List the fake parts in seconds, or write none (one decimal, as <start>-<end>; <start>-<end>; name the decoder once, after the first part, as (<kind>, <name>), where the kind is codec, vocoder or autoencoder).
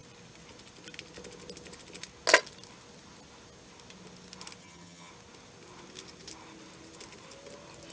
4.6-5.1 (vocoder, HiFi-GAN)